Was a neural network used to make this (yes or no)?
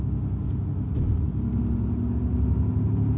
no